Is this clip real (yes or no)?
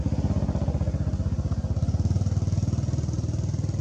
yes